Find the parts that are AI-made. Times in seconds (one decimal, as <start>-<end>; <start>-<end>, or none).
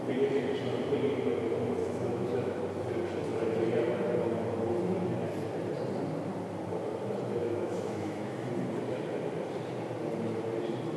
1.8-2.6; 7.4-8.5